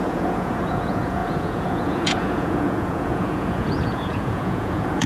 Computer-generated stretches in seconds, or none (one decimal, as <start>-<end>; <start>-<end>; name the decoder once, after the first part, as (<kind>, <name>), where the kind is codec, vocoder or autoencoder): 0.0-5.1 (vocoder, Vocos)